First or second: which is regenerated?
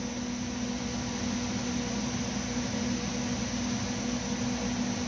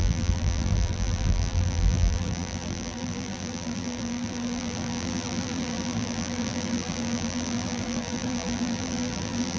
second